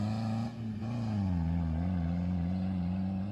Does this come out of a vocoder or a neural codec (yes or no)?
no